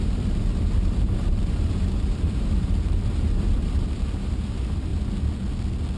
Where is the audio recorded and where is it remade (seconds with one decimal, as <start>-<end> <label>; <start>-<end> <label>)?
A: 0.0-4.9 remade; 4.9-6.0 recorded

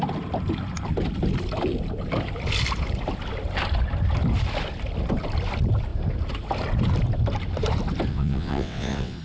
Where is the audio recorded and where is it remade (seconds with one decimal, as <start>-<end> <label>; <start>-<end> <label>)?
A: 0.0-8.1 recorded; 8.1-9.2 remade

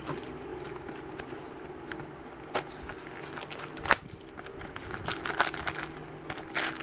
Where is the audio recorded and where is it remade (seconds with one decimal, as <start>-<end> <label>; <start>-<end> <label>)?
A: 0.0-6.8 recorded

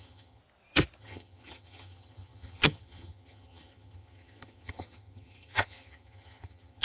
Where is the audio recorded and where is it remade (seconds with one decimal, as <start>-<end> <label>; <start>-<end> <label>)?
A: 0.0-0.4 remade; 0.4-1.0 recorded; 1.0-6.8 remade